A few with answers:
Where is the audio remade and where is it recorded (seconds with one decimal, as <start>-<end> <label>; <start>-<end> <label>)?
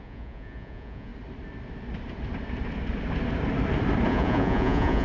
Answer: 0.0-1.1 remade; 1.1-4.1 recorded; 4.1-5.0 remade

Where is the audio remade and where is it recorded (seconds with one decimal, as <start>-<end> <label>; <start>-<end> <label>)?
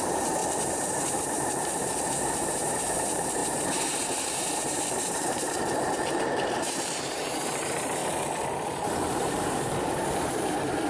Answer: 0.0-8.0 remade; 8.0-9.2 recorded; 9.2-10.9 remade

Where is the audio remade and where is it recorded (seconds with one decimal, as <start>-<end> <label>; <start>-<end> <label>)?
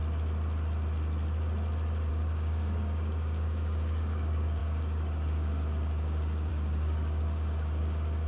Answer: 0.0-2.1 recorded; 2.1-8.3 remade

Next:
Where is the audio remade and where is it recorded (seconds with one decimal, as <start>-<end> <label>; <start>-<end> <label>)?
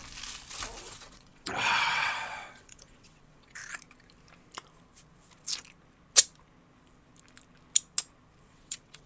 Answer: 0.0-0.8 recorded; 0.8-3.6 remade; 3.6-8.4 recorded; 8.4-9.1 remade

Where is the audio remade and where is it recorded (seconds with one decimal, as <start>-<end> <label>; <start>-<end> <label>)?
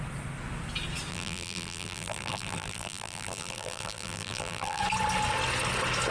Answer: 0.0-1.1 recorded; 1.1-4.8 remade; 4.8-6.1 recorded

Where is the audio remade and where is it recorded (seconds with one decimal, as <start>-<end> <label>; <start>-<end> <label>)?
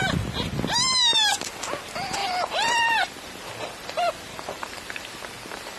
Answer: 0.0-2.2 recorded; 2.2-5.8 remade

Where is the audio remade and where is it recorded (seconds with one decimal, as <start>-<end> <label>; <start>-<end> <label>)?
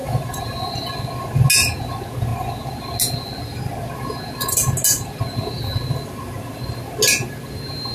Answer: 0.0-0.7 remade; 0.7-7.9 recorded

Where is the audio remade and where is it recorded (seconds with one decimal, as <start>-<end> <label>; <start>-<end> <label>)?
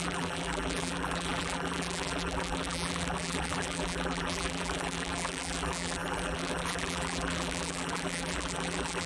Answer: 0.0-9.1 remade